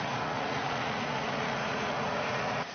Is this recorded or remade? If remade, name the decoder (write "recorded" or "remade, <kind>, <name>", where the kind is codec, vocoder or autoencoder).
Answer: remade, vocoder, Vocos